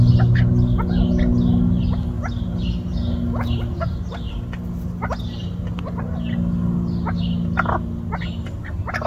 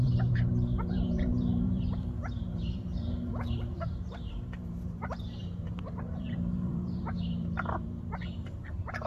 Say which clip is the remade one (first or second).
second